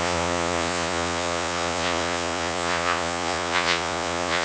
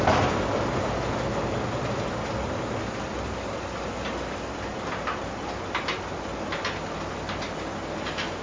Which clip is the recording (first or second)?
second